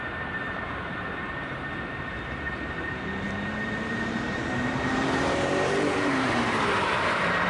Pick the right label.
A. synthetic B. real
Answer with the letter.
A